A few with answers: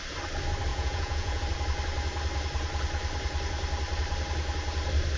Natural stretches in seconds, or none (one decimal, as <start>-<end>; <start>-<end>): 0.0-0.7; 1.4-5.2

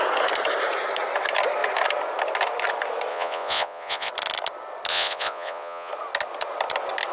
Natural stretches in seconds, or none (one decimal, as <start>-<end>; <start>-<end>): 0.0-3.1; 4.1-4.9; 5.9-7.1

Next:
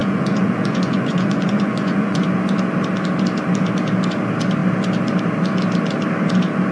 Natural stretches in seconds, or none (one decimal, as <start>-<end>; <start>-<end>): 2.2-6.7

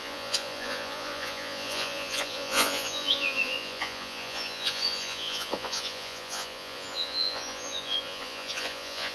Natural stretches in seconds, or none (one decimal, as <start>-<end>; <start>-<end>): none

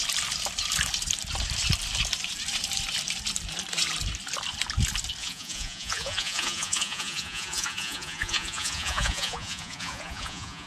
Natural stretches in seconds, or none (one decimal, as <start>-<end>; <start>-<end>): 0.0-5.2

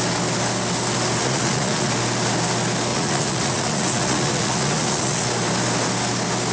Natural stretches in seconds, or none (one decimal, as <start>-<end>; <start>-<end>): 0.0-1.2; 1.9-2.9; 5.3-6.5

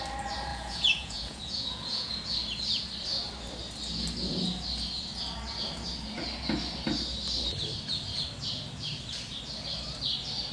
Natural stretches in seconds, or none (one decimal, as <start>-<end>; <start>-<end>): 0.0-0.5; 2.1-10.5

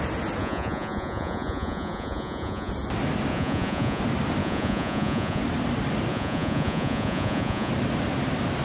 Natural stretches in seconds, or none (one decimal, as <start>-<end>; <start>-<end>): 0.0-0.4; 2.7-3.3; 4.0-4.4; 5.4-6.1; 7.7-8.6